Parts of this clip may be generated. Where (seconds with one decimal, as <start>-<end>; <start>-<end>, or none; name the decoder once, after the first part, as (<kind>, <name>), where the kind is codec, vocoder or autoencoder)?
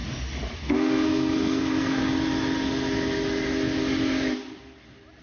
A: 0.6-2.0 (codec, SNAC)